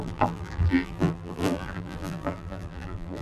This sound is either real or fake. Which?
fake